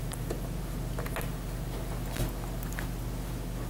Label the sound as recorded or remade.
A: recorded